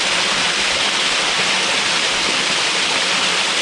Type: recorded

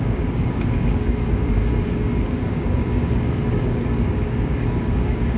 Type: remade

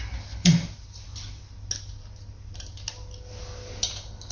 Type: recorded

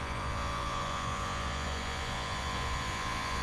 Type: remade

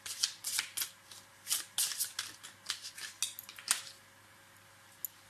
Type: recorded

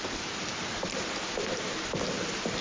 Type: remade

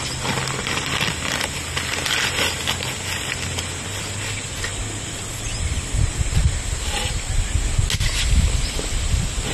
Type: recorded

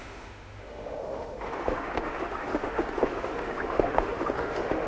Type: remade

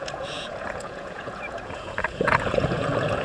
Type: remade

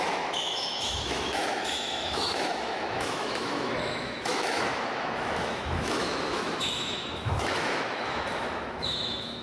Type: remade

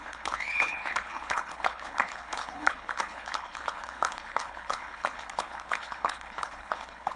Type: remade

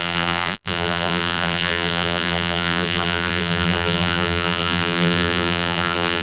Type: remade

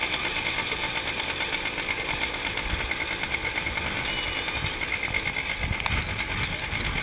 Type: recorded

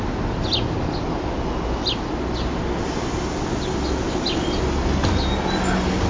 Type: recorded